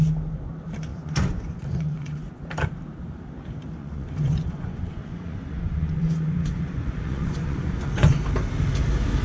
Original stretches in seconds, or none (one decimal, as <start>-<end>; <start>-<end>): 0.0-0.9; 2.4-3.8; 8.2-9.2